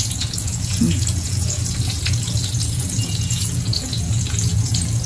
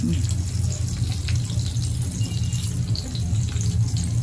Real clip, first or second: second